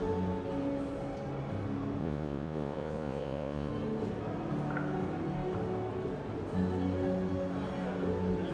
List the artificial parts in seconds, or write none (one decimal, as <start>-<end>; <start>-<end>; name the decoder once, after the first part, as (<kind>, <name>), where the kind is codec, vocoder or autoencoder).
2.0-3.7 (vocoder, Vocos)